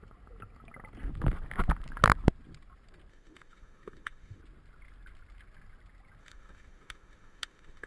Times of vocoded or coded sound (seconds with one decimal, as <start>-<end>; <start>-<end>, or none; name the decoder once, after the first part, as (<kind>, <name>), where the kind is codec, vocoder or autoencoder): 3.1-4.4 (autoencoder, DAC-VAE); 6.2-7.9